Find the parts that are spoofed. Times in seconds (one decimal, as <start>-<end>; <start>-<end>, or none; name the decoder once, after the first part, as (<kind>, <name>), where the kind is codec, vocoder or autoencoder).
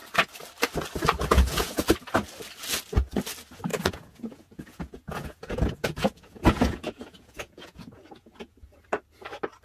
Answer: 1.3-1.8 (vocoder, Vocos); 3.7-8.8